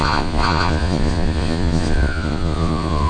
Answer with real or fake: fake